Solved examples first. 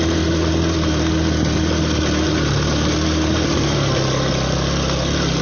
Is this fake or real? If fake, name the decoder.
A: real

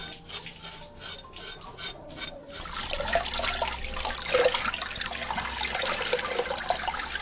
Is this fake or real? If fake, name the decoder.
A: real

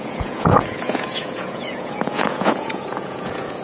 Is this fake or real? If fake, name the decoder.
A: fake, vocoder, Vocos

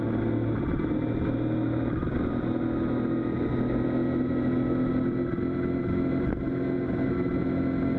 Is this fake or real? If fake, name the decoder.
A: real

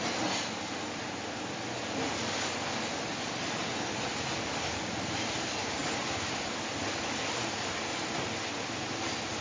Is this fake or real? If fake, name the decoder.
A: real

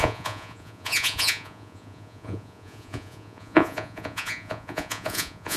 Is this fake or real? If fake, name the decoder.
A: fake, vocoder, Vocos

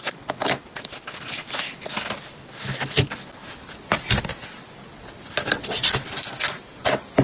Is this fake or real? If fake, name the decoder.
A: real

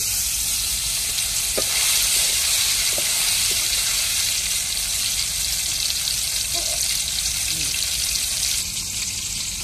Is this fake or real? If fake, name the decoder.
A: real